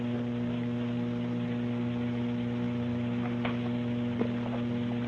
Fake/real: fake